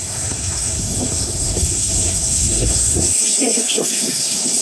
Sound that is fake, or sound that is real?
fake